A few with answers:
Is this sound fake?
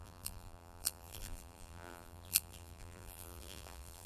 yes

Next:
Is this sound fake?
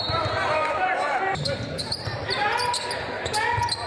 yes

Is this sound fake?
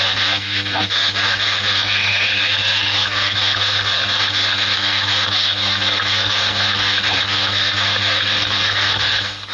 yes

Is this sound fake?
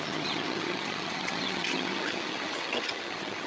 yes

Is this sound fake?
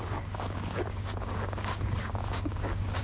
yes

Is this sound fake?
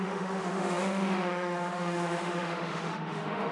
yes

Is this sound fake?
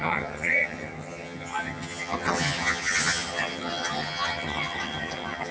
yes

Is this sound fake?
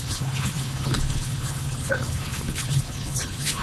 yes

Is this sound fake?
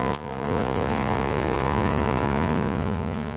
yes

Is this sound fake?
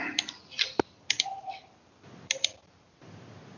no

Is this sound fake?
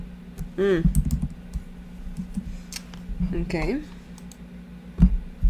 no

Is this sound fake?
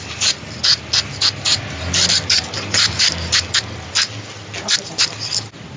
no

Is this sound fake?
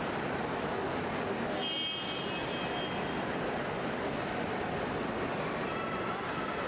no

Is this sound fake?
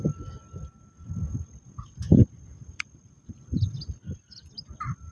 no